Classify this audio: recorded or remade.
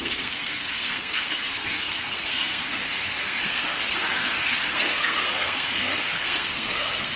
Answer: remade